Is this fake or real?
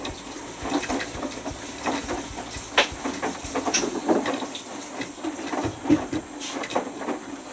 real